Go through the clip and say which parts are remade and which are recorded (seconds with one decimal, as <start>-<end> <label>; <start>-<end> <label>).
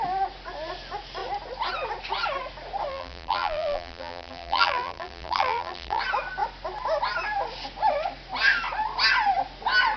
0.0-2.9 recorded; 2.9-6.0 remade; 6.0-10.0 recorded